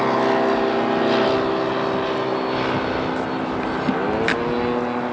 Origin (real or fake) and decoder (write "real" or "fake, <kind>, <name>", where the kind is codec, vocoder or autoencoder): real